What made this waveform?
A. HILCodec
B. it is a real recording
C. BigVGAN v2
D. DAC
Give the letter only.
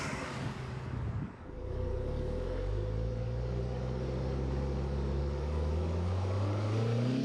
D